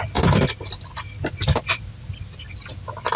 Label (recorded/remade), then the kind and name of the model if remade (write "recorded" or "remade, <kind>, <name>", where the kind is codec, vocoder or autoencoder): recorded